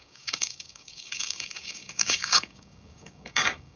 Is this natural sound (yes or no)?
no